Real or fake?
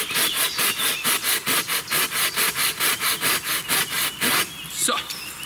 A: real